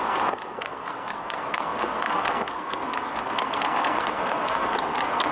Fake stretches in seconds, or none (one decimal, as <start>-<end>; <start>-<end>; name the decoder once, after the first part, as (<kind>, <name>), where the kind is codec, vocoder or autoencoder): 0.0-5.3 (codec, SNAC)

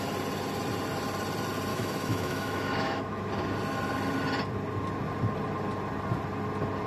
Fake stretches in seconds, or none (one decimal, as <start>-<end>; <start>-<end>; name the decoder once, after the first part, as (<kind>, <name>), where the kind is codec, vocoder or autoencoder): 1.7-3.3 (autoencoder, DAC-VAE)

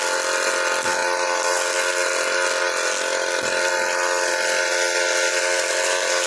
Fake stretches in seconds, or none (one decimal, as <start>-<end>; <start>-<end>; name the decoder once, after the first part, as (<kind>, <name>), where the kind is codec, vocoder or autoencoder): none

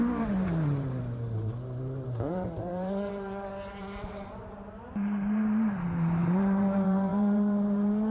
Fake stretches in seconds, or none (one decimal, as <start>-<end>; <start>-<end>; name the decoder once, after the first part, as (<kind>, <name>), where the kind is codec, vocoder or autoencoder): 0.0-8.1 (vocoder, BigVGAN v2)